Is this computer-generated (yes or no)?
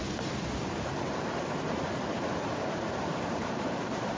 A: yes